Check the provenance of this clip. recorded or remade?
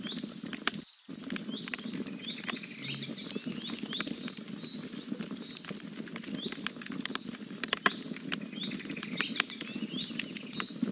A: recorded